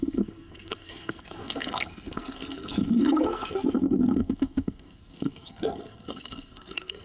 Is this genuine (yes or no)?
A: no